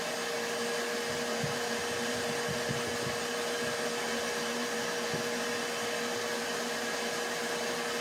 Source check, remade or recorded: recorded